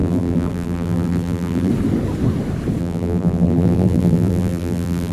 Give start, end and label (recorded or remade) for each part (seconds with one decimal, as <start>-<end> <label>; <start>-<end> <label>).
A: 0.0-1.7 remade; 1.7-2.8 recorded; 2.8-5.1 remade